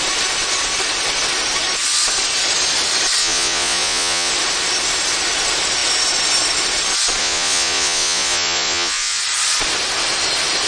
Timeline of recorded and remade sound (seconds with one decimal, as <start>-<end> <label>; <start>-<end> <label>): 0.0-3.2 recorded; 3.2-4.3 remade; 4.3-7.2 recorded; 7.2-9.2 remade; 9.2-10.7 recorded